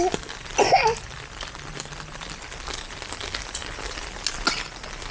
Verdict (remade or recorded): recorded